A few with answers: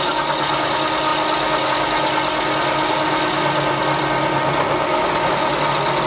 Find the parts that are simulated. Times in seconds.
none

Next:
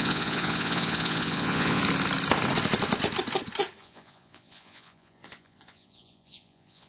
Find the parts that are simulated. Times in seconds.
0.0-1.8; 3.8-6.9

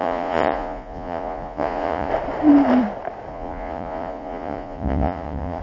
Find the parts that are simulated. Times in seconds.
0.0-2.1; 3.3-5.6

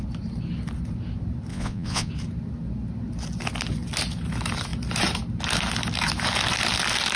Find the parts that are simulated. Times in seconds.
1.5-2.1